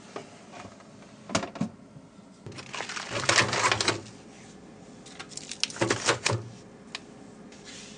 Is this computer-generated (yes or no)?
no